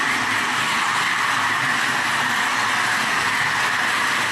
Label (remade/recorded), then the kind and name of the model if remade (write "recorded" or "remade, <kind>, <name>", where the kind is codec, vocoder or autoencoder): recorded